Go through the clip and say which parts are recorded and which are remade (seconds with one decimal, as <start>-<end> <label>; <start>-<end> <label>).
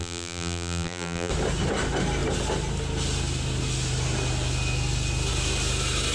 0.0-1.3 remade; 1.3-6.1 recorded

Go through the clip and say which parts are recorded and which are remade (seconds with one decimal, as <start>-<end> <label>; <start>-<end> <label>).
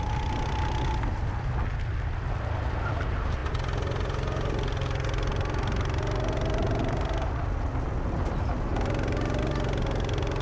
0.0-10.4 recorded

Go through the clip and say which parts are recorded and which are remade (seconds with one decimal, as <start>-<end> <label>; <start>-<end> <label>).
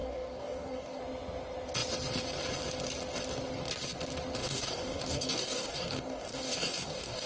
0.0-1.0 remade; 1.0-4.4 recorded; 4.4-7.3 remade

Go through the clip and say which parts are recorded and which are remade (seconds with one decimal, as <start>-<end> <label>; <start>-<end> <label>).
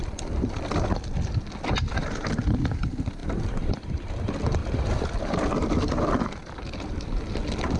0.0-3.2 recorded; 3.2-3.9 remade; 3.9-4.6 recorded; 4.6-5.2 remade; 5.2-7.8 recorded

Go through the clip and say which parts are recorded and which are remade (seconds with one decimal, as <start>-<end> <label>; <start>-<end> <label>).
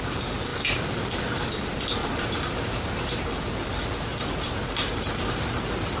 0.0-2.0 recorded; 2.0-3.2 remade; 3.2-4.1 recorded; 4.1-5.2 remade; 5.2-6.0 recorded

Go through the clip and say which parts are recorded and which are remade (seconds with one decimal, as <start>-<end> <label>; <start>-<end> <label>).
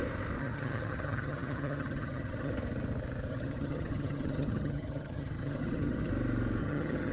0.0-0.4 recorded; 0.4-2.5 remade; 2.5-3.3 recorded; 3.3-6.1 remade; 6.1-6.6 recorded; 6.6-7.1 remade